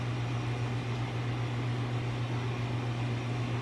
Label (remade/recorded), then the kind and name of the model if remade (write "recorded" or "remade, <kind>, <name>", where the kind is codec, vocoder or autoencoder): recorded